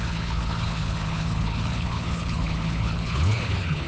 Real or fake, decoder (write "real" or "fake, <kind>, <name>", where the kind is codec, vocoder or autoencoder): fake, codec, HILCodec